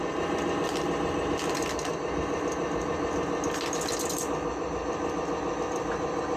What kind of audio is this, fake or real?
real